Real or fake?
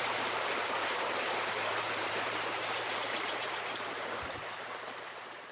fake